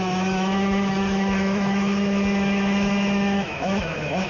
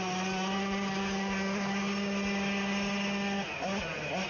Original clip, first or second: second